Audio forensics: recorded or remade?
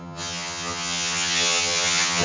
remade